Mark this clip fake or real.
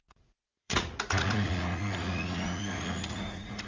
fake